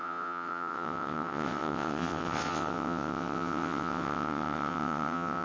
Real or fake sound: fake